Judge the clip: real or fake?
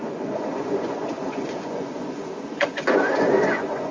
fake